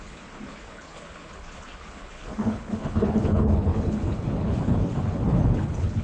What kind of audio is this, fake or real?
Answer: fake